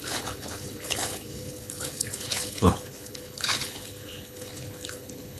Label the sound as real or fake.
fake